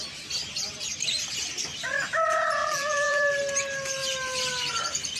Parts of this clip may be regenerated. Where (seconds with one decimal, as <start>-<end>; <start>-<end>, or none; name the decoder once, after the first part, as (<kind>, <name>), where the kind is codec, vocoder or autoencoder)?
2.6-3.3 (vocoder, BigVGAN v2)